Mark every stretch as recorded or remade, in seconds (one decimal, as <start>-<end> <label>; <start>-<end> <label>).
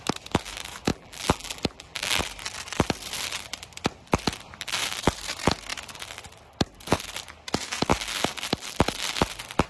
0.0-0.9 recorded; 0.9-2.2 remade; 2.2-9.7 recorded